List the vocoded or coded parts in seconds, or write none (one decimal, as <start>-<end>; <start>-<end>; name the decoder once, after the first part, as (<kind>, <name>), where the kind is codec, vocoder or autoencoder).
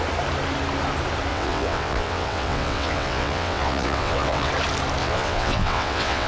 1.3-4.5 (vocoder, WaveNeXt); 5.0-6.3